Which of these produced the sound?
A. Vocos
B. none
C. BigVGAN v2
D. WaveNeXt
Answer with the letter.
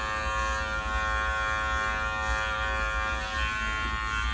B